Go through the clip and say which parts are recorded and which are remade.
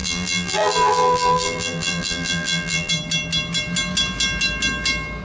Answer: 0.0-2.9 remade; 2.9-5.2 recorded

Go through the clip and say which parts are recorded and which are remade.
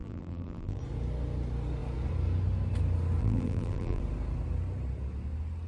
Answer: 0.0-0.8 remade; 0.8-3.2 recorded; 3.2-4.0 remade; 4.0-5.7 recorded